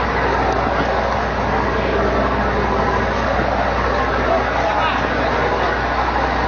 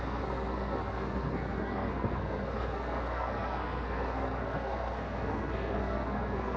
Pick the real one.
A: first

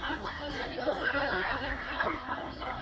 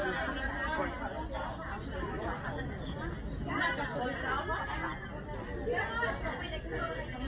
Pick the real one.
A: second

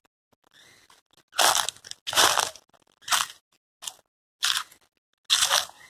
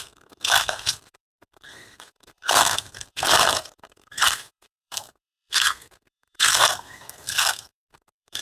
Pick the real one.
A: first